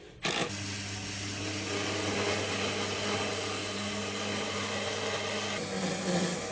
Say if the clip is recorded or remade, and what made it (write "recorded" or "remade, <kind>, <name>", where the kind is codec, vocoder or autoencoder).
recorded